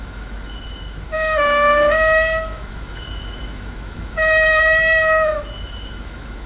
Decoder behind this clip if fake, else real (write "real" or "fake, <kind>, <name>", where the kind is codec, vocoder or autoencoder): fake, autoencoder, DAC-VAE